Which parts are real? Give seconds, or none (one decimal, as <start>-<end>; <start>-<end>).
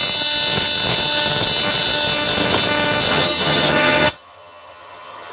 0.0-3.1